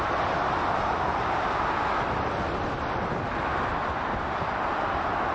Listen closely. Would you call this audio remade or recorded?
recorded